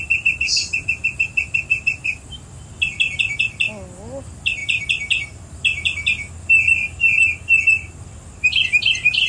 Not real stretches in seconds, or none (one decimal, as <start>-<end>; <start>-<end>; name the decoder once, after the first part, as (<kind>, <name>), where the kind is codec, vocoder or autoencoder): none